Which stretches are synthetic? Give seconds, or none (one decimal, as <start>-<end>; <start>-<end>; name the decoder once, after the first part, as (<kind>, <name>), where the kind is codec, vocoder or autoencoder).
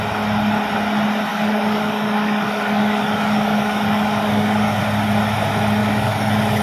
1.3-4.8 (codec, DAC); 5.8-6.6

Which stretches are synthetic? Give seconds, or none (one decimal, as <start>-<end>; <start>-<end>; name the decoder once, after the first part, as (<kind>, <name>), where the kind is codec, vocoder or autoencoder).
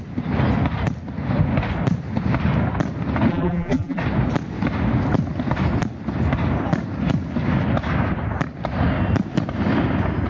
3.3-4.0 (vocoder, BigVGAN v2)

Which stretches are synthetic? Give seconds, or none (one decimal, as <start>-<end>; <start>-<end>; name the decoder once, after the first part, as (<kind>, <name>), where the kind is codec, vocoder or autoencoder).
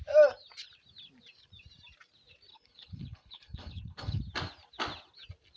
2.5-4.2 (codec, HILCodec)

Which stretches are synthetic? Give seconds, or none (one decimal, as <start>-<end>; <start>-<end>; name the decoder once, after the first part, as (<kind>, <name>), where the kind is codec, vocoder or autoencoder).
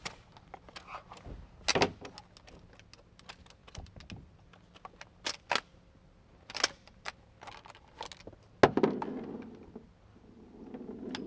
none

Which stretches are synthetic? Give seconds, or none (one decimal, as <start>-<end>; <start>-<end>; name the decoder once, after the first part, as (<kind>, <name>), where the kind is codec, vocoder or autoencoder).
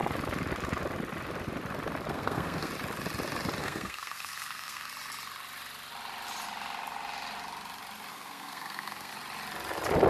2.1-2.7 (codec, SNAC); 3.6-4.9; 8.1-9.1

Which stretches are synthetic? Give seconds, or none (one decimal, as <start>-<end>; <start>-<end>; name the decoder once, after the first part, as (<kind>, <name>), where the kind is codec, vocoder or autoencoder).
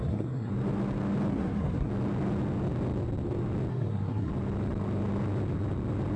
0.0-0.5 (codec, SNAC); 1.3-1.9; 3.7-4.3